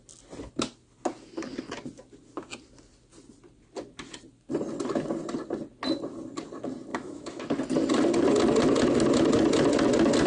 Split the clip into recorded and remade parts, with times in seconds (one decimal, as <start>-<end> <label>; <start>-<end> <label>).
0.0-6.9 recorded; 6.9-7.4 remade; 7.4-10.3 recorded